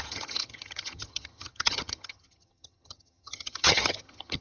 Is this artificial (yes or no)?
yes